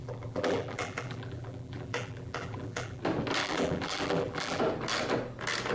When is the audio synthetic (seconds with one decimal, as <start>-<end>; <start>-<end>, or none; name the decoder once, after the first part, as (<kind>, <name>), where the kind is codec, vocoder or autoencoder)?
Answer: 0.0-3.0 (vocoder, BigVGAN v2); 3.4-4.6